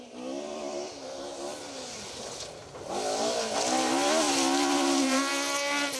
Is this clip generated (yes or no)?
no